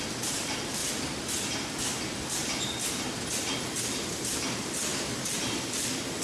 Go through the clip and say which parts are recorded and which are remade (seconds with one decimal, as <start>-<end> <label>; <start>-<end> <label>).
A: 0.0-0.8 remade; 0.8-3.6 recorded; 3.6-6.2 remade

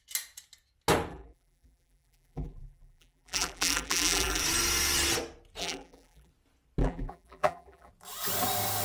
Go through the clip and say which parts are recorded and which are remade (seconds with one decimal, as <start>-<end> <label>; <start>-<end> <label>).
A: 0.0-1.1 recorded; 1.1-4.4 remade; 4.4-5.6 recorded; 5.6-6.3 remade; 6.3-6.8 recorded; 6.8-7.9 remade; 7.9-8.8 recorded